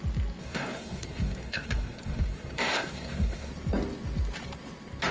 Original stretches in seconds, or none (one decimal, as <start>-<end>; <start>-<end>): 0.0-0.4; 3.5-5.1